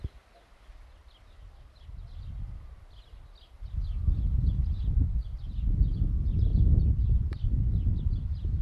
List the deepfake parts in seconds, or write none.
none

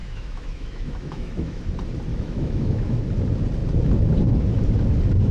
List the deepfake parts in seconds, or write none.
0.0-1.6; 2.1-3.0

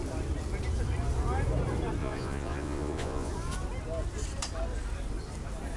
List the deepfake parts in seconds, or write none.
2.0-3.3

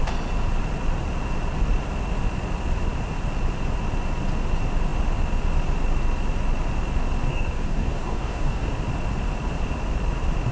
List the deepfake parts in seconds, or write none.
7.3-8.7